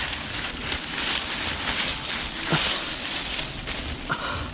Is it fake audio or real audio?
real